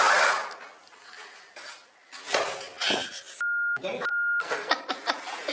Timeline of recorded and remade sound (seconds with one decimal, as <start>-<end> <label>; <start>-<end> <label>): 0.0-4.1 recorded; 4.1-4.7 remade; 4.7-5.5 recorded